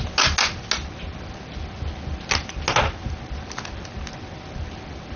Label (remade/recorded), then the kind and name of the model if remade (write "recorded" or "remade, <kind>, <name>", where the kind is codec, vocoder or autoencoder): recorded